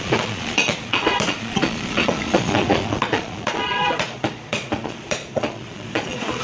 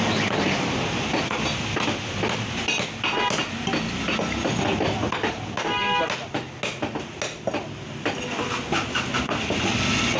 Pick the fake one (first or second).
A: first